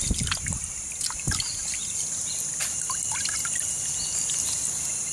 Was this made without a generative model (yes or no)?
yes